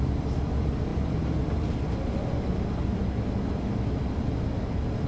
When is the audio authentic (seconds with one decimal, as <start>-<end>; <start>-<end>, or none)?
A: 0.0-5.1